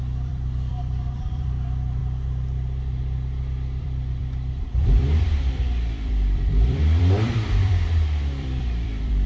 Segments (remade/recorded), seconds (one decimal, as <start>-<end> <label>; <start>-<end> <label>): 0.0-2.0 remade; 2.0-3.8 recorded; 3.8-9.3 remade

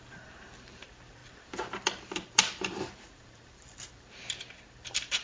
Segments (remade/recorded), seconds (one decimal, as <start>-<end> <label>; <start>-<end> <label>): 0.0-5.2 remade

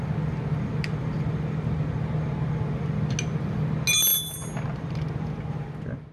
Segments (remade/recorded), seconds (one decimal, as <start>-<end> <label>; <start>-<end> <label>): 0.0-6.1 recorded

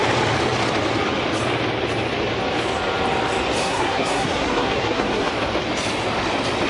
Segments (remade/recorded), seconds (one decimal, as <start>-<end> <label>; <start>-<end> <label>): 0.0-3.6 recorded; 3.6-5.3 remade; 5.3-6.7 recorded